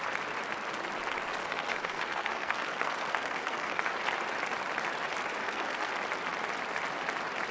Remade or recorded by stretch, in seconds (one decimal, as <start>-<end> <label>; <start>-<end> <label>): 0.0-1.4 recorded; 1.4-3.9 remade; 3.9-5.4 recorded; 5.4-5.9 remade; 5.9-7.5 recorded